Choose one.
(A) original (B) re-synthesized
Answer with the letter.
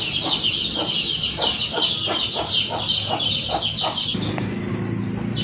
A